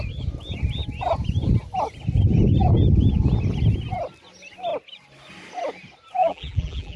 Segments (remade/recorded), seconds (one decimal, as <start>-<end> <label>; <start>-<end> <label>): 0.0-6.2 recorded; 6.2-7.0 remade